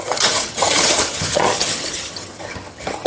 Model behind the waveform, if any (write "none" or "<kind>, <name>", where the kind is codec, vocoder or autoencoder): vocoder, HiFi-GAN